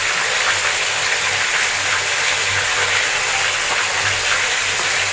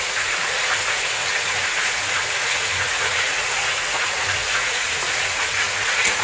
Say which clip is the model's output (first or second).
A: second